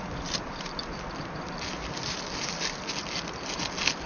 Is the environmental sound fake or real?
real